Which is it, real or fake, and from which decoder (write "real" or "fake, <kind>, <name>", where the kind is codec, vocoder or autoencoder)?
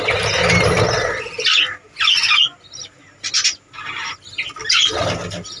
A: real